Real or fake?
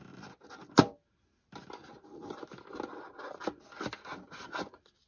real